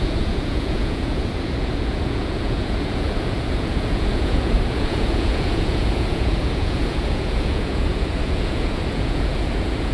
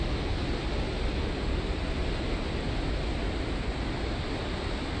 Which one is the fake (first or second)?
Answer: first